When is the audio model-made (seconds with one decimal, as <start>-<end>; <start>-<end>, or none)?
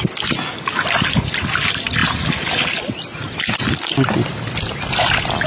none